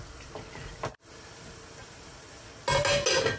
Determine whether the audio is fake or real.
real